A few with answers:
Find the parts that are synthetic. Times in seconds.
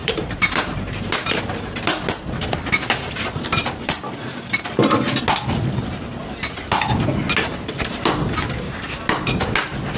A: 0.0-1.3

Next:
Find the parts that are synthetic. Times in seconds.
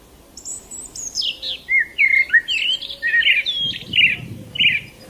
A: 0.5-1.2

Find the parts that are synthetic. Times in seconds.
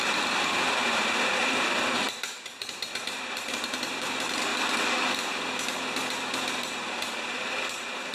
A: 0.0-4.5; 6.5-8.1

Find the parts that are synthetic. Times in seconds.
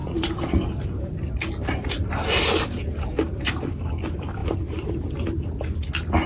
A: 0.0-1.1; 4.4-4.9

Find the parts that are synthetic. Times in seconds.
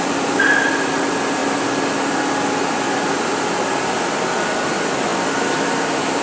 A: 5.1-6.2